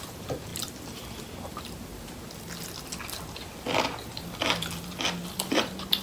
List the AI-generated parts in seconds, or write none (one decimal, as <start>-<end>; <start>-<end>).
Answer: 0.0-1.9; 5.5-6.0